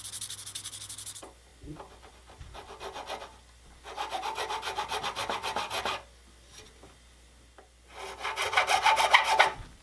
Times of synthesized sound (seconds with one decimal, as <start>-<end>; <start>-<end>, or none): none

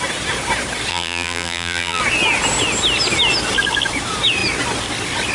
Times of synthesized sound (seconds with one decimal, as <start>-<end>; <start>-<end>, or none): 0.9-2.0

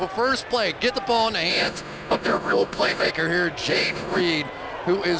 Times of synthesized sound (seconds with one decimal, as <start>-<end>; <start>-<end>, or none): 1.5-3.1; 3.7-4.2

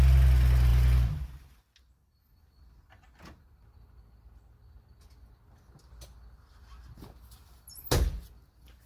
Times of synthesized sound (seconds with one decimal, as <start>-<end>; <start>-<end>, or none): none

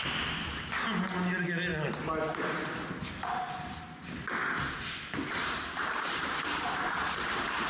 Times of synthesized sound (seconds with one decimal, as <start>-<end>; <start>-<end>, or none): 5.4-7.7

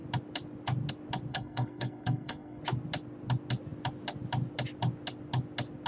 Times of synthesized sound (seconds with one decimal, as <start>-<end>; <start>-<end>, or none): 1.3-2.6

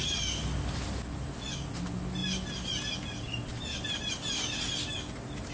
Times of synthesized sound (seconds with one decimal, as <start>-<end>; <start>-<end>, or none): none

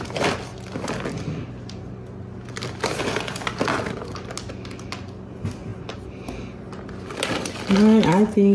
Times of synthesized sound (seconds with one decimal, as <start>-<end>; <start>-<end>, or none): none